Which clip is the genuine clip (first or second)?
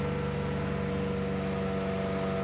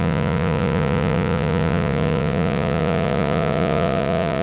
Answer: first